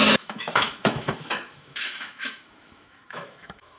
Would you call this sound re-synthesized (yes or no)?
yes